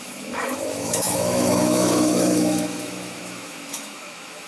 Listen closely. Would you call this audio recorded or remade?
remade